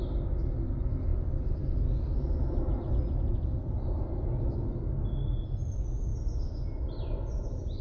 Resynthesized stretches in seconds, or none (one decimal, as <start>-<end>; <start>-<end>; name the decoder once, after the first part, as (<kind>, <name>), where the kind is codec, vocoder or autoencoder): none